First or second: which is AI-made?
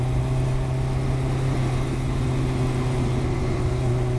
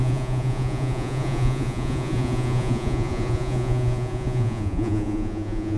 second